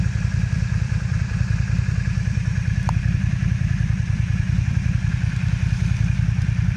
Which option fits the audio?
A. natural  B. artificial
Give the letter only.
B